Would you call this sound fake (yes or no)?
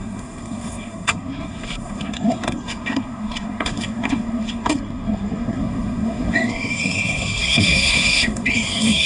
yes